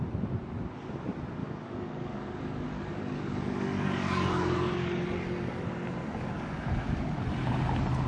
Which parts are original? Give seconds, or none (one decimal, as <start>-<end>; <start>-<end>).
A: 0.0-1.4; 5.6-6.0; 7.2-8.1